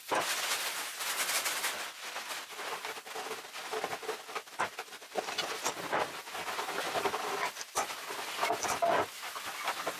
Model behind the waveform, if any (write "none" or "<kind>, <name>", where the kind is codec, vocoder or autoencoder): none